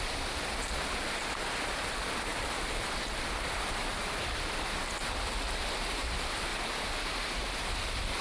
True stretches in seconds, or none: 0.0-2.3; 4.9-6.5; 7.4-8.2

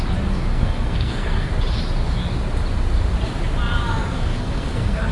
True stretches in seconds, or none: 0.0-0.5; 1.5-4.1

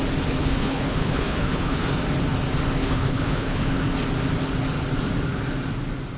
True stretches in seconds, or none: 0.0-0.4; 1.9-2.8; 3.7-6.2

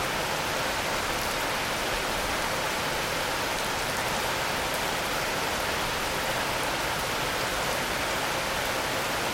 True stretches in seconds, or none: 0.0-1.8; 3.2-9.3